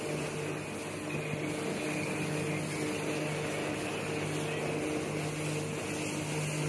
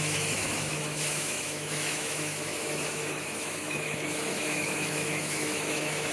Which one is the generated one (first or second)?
second